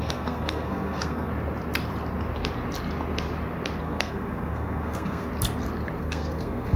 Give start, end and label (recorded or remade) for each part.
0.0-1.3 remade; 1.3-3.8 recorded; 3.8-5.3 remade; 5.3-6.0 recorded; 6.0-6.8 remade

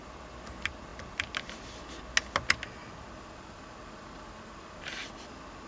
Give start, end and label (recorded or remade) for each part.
0.0-5.7 recorded

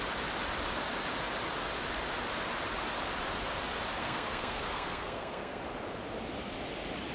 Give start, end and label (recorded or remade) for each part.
0.0-4.0 recorded; 4.0-5.6 remade; 5.6-7.1 recorded

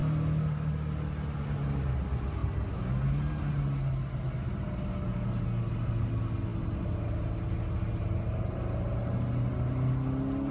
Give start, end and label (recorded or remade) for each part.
0.0-10.5 recorded

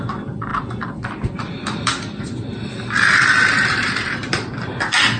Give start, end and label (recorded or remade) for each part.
0.0-5.2 recorded

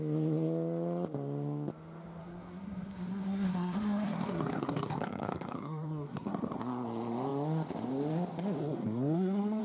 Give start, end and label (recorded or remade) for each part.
0.0-2.2 recorded; 2.2-6.6 remade; 6.6-8.6 recorded; 8.6-9.6 remade

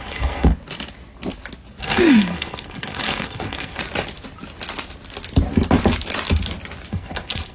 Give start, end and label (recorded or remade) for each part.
0.0-0.5 remade; 0.5-1.8 recorded; 1.8-3.8 remade; 3.8-6.9 recorded; 6.9-7.5 remade

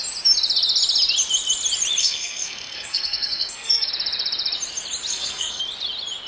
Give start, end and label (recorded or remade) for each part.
0.0-2.0 recorded; 2.0-3.9 remade; 3.9-5.1 recorded; 5.1-5.6 remade; 5.6-6.3 recorded